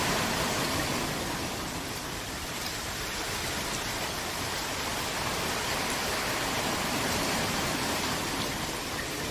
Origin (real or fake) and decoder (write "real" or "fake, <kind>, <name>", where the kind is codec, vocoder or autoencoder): real